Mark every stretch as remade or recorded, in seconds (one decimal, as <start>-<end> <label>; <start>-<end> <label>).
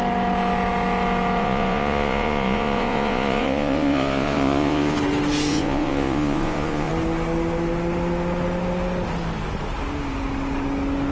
0.0-1.4 recorded; 1.4-5.0 remade; 5.0-5.5 recorded; 5.5-6.9 remade; 6.9-11.1 recorded